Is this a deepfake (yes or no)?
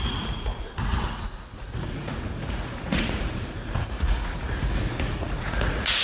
yes